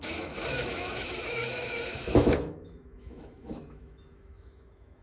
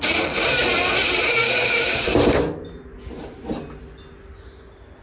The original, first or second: second